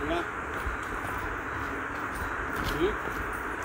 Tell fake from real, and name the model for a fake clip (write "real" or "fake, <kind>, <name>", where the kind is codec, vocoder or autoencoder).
real